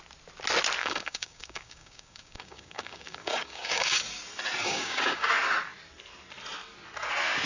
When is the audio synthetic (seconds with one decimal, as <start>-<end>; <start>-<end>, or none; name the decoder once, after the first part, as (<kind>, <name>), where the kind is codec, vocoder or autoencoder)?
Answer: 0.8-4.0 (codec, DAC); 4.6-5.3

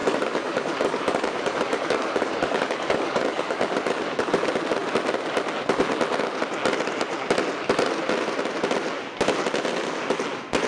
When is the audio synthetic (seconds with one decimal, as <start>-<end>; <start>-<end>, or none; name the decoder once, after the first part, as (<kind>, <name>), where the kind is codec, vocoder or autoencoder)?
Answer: 0.0-4.3 (codec, DAC)

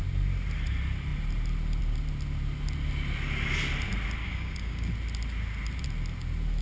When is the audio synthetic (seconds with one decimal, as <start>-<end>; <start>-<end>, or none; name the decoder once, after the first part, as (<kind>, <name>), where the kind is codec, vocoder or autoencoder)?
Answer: 4.2-4.9 (codec, DAC)

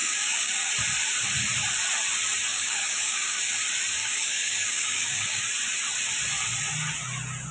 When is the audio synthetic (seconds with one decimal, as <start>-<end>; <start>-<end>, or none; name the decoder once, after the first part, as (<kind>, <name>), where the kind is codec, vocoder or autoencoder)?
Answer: 0.0-0.7 (codec, DAC); 2.5-3.4; 4.0-5.4

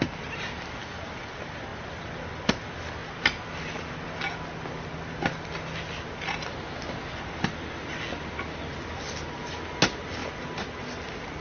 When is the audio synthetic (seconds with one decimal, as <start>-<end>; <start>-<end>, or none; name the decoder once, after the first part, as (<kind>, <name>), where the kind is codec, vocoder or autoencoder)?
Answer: none

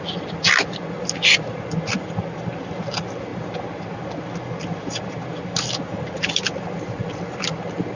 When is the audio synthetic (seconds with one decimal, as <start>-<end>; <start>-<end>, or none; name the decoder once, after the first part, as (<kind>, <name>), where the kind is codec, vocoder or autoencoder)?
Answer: none

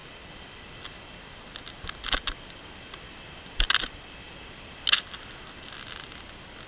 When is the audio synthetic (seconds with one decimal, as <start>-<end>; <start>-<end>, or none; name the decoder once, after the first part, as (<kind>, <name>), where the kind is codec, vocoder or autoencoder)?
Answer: none

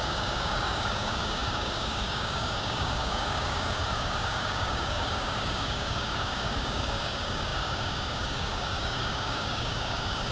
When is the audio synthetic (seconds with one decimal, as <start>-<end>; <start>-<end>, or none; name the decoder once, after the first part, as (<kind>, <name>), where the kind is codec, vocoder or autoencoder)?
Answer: 0.0-10.3 (codec, DAC)